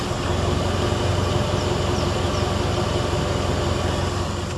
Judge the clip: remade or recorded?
recorded